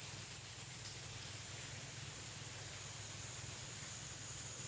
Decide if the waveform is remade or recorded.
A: recorded